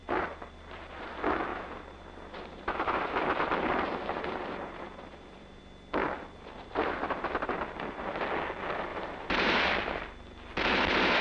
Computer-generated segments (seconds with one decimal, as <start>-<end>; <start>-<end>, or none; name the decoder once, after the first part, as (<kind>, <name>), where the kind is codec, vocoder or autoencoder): 0.0-1.1 (vocoder, BigVGAN v2); 1.5-5.6; 6.0-8.2; 8.9-9.6